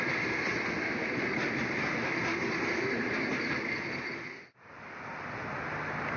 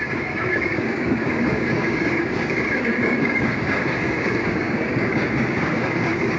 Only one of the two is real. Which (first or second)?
first